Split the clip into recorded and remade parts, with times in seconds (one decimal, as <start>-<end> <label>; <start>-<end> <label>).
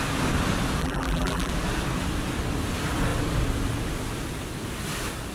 0.0-0.8 recorded; 0.8-1.5 remade; 1.5-5.3 recorded